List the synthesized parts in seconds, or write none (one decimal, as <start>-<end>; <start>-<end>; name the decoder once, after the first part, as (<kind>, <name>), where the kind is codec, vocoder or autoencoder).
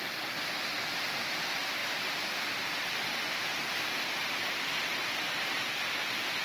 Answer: none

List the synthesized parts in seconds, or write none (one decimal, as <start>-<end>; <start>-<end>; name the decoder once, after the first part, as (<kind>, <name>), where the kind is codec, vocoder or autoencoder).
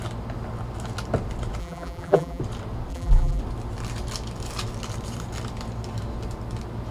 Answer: 1.6-2.4 (vocoder, BigVGAN v2); 2.9-3.4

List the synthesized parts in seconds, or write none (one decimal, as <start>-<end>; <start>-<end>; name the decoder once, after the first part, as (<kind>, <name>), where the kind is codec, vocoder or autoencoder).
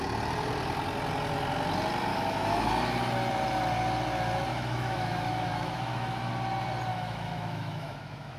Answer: 2.1-2.7 (autoencoder, DAC-VAE); 4.5-6.3; 6.9-8.4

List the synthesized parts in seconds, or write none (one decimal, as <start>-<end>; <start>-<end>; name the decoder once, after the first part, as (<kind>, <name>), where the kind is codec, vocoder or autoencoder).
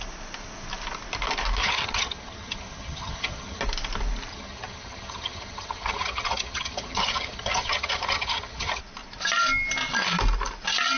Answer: 1.6-3.6 (vocoder, HiFi-GAN); 4.3-8.8